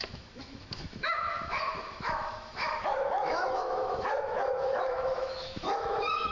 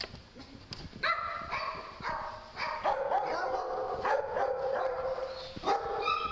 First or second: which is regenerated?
first